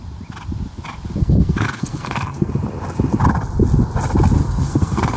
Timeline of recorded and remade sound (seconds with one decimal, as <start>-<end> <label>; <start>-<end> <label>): 0.0-1.2 recorded; 1.2-2.5 remade; 2.5-4.4 recorded; 4.4-5.2 remade